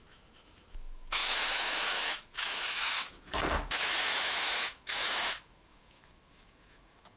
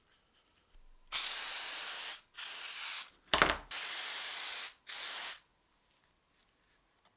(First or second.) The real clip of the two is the second